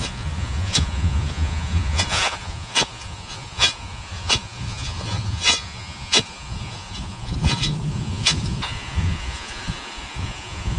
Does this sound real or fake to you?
fake